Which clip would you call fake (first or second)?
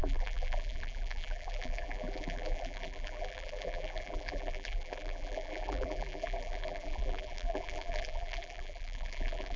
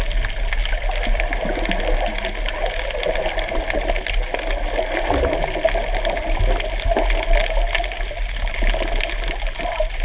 first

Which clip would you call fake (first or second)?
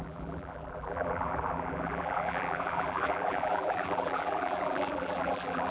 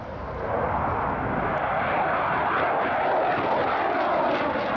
first